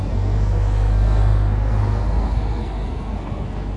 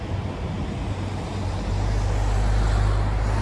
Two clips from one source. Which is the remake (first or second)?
first